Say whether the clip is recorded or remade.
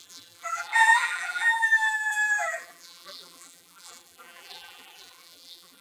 remade